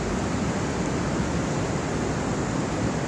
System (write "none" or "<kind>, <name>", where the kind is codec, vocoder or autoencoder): none